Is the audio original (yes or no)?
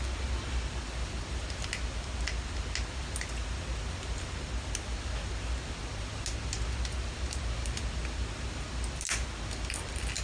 yes